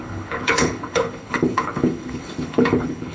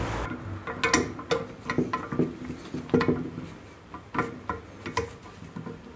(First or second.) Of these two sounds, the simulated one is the first